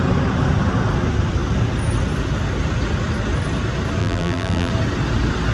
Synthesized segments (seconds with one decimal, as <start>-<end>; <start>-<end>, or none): 4.0-4.7